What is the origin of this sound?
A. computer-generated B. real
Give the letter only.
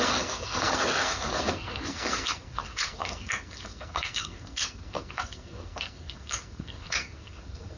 A